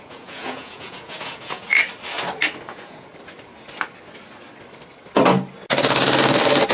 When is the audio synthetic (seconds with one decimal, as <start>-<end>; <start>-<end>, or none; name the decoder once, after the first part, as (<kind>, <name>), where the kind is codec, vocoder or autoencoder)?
0.0-1.7 (vocoder, Vocos); 2.7-3.1